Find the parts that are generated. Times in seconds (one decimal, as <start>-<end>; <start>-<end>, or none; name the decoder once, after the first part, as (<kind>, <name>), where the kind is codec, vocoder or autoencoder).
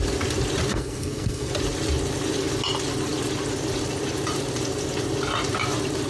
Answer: 0.7-1.5 (codec, SNAC)